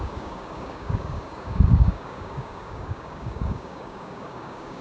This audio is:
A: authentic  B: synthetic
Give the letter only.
B